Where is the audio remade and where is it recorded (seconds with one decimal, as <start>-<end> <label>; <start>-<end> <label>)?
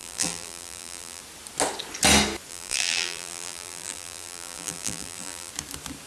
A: 0.0-1.2 remade; 1.2-2.5 recorded; 2.5-5.5 remade; 5.5-6.1 recorded